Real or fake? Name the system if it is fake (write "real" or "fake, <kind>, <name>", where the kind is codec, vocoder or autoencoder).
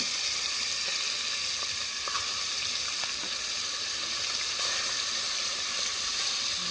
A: real